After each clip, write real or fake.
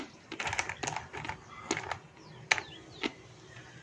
real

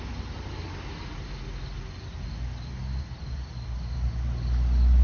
real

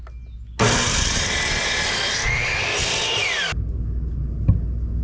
real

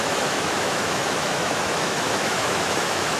fake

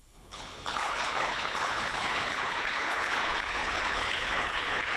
fake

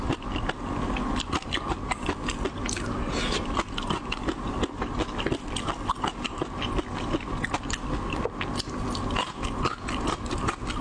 real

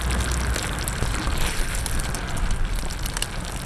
real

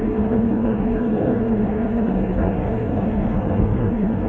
fake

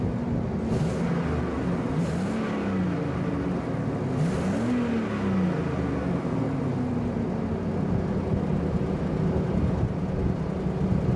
real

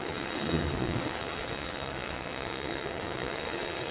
fake